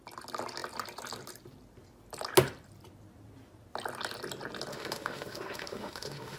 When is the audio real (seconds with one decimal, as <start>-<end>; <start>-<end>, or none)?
0.0-4.7